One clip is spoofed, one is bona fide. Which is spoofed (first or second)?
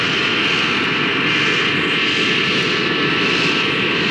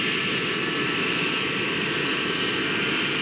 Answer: second